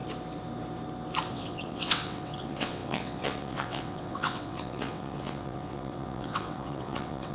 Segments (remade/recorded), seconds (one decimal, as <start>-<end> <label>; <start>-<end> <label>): 0.0-1.3 recorded; 1.3-7.3 remade